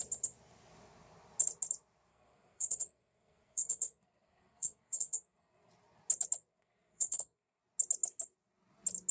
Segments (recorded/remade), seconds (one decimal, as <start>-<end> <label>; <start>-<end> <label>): 0.0-2.1 recorded; 2.1-5.7 remade; 5.7-6.5 recorded; 6.5-7.6 remade; 7.6-9.1 recorded